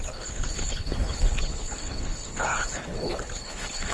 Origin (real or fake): fake